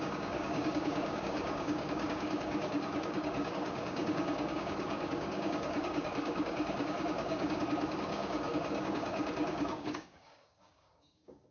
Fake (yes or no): yes